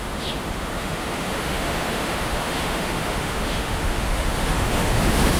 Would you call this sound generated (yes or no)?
yes